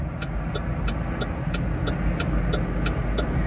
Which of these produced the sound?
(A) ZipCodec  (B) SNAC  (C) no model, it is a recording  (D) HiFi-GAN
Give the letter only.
C